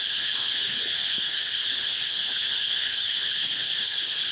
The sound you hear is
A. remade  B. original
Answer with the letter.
A